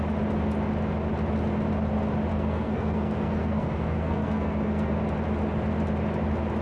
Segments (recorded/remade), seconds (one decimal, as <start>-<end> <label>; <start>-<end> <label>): 0.0-2.3 recorded; 2.3-4.9 remade; 4.9-6.6 recorded